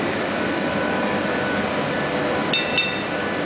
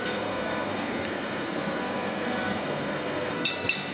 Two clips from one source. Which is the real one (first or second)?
first